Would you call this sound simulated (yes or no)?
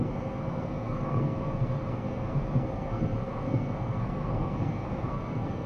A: yes